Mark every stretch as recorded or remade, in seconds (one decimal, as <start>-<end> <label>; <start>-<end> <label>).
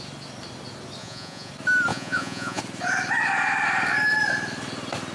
0.0-1.0 recorded; 1.0-1.5 remade; 1.5-1.9 recorded; 1.9-2.6 remade; 2.6-5.1 recorded